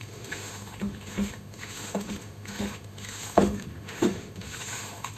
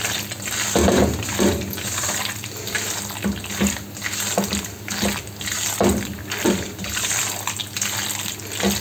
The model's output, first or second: first